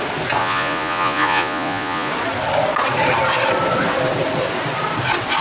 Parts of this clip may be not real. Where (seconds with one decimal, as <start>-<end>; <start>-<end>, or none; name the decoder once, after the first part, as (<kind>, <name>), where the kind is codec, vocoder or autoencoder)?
0.4-2.1 (vocoder, Vocos)